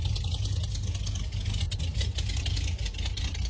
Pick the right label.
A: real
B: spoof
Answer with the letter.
A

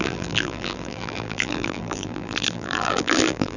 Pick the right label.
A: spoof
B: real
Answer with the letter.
A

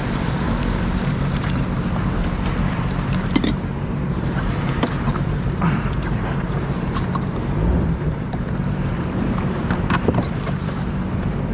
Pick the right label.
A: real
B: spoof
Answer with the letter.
B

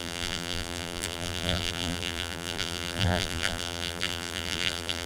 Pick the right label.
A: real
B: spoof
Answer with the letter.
B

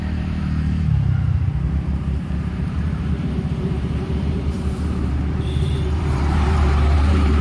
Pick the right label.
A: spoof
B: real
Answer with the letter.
A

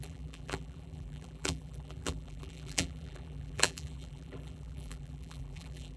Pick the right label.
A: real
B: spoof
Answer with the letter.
B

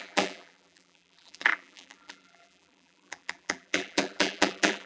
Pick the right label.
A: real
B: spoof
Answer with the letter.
B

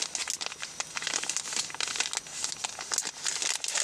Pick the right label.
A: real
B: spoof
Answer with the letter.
A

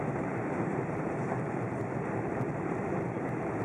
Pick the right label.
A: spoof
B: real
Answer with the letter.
A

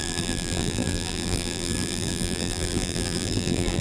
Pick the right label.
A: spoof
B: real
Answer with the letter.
A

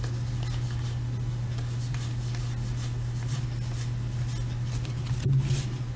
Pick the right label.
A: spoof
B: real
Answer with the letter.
B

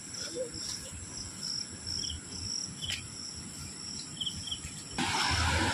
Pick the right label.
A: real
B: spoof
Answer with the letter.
A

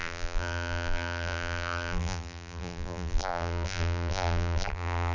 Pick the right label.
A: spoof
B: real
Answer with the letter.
A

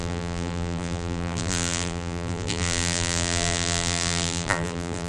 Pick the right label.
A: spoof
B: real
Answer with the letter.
A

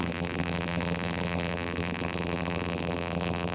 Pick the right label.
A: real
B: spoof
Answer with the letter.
B